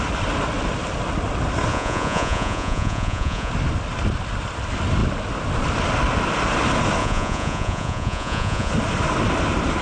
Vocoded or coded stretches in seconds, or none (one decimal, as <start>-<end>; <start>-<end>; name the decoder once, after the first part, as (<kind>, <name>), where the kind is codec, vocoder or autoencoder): 1.7-3.5 (vocoder, Vocos); 7.0-8.7